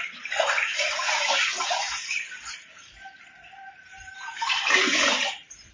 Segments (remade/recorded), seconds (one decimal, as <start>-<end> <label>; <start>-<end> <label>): 0.0-0.7 recorded; 0.7-3.3 remade; 3.3-3.9 recorded; 3.9-5.7 remade